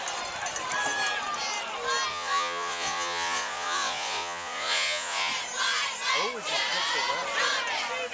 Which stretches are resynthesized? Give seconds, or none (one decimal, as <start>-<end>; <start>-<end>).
2.1-5.3